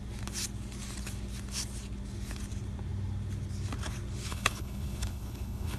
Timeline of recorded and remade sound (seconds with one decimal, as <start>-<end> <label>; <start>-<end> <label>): 0.0-4.3 recorded; 4.3-5.8 remade